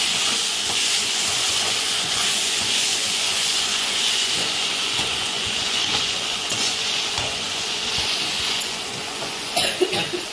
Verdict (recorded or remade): remade